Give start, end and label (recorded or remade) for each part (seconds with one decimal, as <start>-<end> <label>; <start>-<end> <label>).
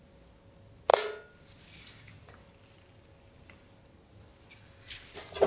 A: 0.0-5.5 recorded